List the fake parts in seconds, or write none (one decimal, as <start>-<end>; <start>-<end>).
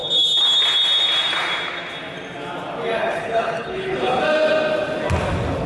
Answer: 3.0-4.2